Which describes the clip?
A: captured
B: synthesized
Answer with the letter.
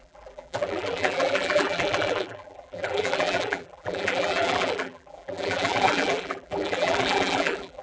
B